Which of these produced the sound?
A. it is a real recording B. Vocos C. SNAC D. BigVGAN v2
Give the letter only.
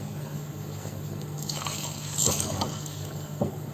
C